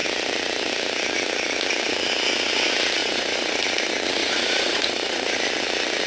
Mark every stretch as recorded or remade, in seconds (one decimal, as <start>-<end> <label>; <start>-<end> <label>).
0.0-3.0 recorded; 3.0-3.6 remade; 3.6-4.2 recorded; 4.2-5.4 remade; 5.4-6.1 recorded

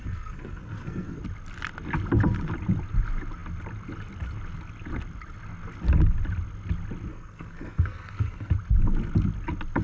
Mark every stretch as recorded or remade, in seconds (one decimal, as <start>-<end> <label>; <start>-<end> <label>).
0.0-1.2 remade; 1.2-7.1 recorded; 7.1-8.5 remade; 8.5-9.8 recorded

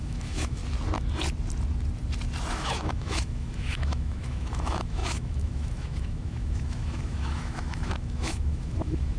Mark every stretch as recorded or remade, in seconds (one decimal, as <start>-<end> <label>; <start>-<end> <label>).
0.0-0.6 remade; 0.6-2.5 recorded; 2.5-9.2 remade

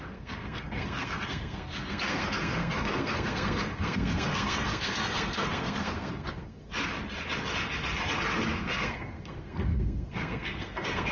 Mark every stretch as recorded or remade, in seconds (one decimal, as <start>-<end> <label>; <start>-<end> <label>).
0.0-6.7 remade; 6.7-8.6 recorded; 8.6-11.1 remade

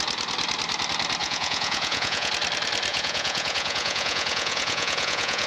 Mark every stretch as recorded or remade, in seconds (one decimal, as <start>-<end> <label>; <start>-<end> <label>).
0.0-1.2 recorded; 1.2-2.3 remade; 2.3-2.9 recorded; 2.9-5.5 remade